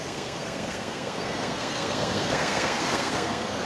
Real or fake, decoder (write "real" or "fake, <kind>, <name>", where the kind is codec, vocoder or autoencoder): fake, codec, SNAC